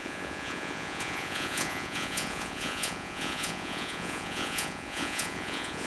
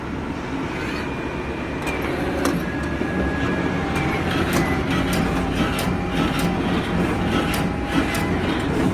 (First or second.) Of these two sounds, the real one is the second